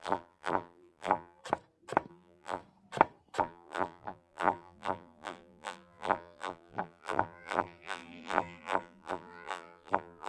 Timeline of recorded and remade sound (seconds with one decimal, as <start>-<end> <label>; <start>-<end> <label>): 0.0-1.4 remade; 1.4-2.1 recorded; 2.1-2.6 remade; 2.6-3.4 recorded; 3.4-10.3 remade